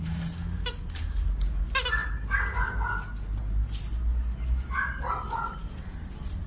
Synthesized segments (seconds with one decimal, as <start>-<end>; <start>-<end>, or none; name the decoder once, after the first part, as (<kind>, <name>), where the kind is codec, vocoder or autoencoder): none

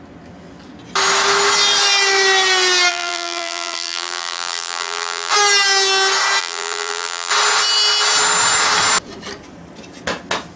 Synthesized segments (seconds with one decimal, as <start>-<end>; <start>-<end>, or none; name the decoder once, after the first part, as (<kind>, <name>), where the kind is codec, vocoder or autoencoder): 2.9-5.3 (vocoder, BigVGAN v2); 6.4-7.3